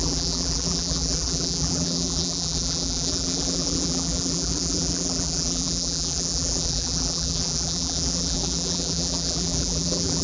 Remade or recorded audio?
remade